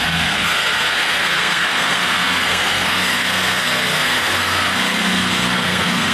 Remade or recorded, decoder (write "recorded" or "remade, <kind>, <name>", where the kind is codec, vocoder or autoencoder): remade, codec, SNAC